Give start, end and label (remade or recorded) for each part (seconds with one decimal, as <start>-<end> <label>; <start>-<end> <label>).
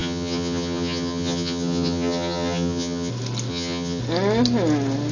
0.0-3.1 remade; 3.1-3.5 recorded; 3.5-4.0 remade; 4.0-5.1 recorded